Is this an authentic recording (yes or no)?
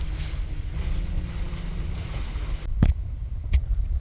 yes